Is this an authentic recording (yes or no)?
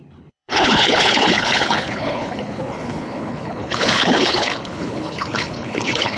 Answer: no